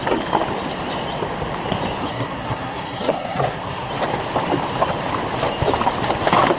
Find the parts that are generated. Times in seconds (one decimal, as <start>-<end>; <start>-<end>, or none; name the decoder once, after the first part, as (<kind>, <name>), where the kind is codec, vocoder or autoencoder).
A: 2.0-3.9 (codec, SNAC)